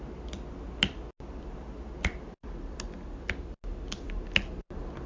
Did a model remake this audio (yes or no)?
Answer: no